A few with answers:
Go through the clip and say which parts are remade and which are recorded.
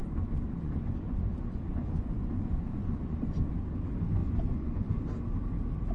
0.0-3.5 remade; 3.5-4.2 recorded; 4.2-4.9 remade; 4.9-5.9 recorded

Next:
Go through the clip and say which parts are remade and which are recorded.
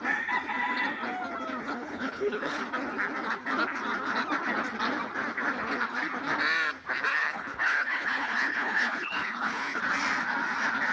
0.0-1.6 recorded; 1.6-2.6 remade; 2.6-7.1 recorded; 7.1-9.8 remade; 9.8-10.9 recorded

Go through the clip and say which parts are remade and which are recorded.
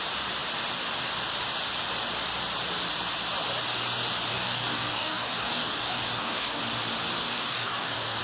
0.0-4.3 recorded; 4.3-6.6 remade; 6.6-7.2 recorded; 7.2-8.2 remade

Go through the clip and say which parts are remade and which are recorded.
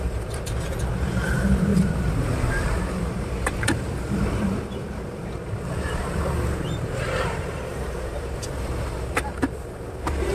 0.0-10.3 remade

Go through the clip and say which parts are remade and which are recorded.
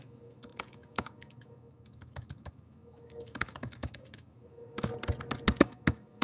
0.0-4.9 remade; 4.9-5.6 recorded; 5.6-6.2 remade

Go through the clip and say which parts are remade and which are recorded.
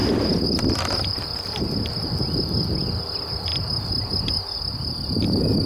0.0-3.5 remade; 3.5-4.2 recorded; 4.2-5.7 remade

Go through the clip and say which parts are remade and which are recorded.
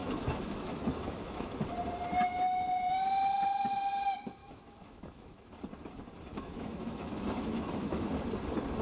0.0-1.5 remade; 1.5-4.4 recorded; 4.4-5.6 remade; 5.6-6.3 recorded; 6.3-8.1 remade; 8.1-8.8 recorded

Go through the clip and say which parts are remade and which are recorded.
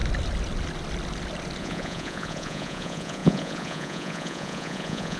0.0-1.6 recorded; 1.6-5.2 remade